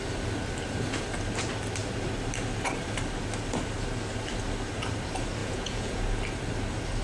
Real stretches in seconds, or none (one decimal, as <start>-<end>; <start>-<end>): 0.0-5.4; 6.0-7.0